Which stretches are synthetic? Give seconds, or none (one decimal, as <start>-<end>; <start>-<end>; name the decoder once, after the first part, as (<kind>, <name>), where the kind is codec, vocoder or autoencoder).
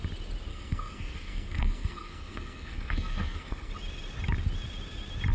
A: 0.5-3.7 (codec, SNAC)